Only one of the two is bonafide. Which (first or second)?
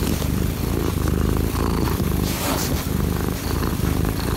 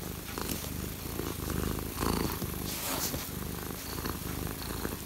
second